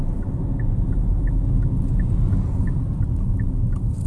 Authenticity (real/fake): real